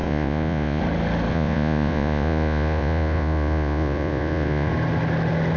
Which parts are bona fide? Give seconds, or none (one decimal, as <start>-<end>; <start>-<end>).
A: 0.8-1.3; 4.7-5.6